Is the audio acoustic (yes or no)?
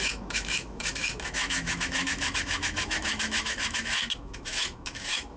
no